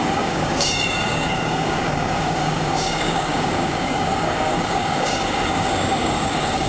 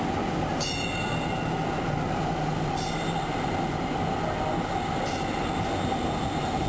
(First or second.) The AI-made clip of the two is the first